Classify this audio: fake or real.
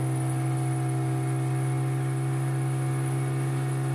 real